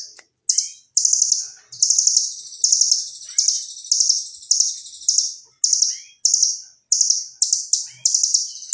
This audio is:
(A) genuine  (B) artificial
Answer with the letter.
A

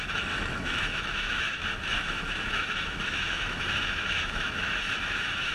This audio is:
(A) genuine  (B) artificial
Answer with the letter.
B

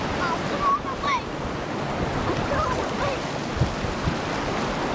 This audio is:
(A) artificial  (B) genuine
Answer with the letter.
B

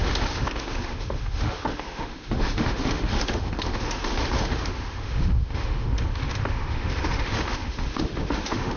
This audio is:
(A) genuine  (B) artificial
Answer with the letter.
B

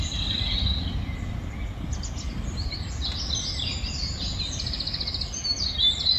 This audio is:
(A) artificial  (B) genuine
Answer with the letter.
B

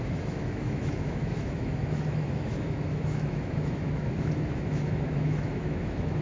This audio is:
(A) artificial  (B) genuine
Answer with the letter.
A